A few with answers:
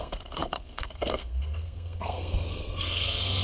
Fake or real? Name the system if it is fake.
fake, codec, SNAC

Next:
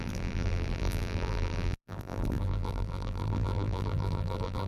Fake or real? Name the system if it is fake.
fake, vocoder, BigVGAN v2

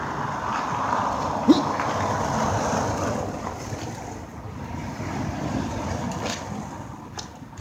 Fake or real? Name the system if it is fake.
real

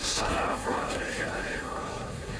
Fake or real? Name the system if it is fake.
fake, codec, SNAC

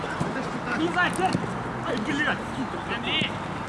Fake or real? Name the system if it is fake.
real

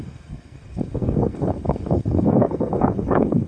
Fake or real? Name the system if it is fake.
fake, codec, SNAC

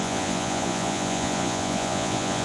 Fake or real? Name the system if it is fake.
fake, vocoder, Vocos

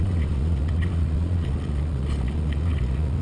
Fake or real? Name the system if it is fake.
fake, vocoder, Vocos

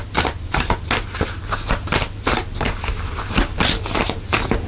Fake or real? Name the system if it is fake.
real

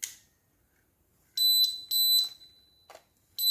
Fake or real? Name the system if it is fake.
real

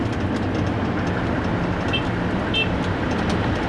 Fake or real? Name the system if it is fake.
real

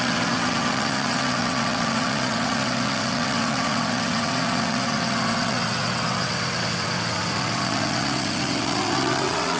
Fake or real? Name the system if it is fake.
fake, vocoder, WaveNeXt